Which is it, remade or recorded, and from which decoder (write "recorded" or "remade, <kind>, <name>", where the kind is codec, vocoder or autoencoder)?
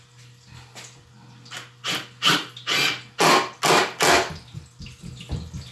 recorded